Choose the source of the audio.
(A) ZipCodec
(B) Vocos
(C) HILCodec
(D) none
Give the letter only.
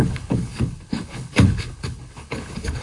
C